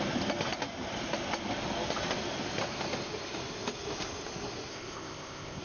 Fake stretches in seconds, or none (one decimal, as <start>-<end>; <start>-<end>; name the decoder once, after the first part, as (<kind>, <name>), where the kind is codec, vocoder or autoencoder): 4.7-5.6 (codec, ZipCodec)